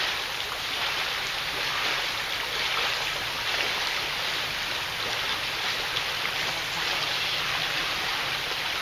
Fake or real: real